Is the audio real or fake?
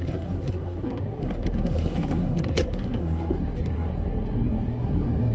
fake